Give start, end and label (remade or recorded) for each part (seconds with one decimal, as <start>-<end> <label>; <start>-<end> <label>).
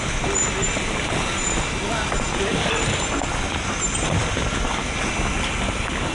0.0-6.1 recorded